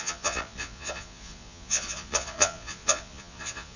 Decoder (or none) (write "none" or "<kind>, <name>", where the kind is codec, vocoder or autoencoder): vocoder, Vocos